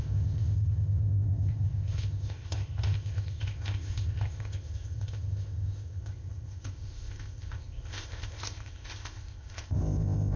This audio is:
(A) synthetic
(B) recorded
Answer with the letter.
A